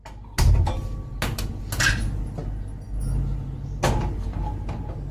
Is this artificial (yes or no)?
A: no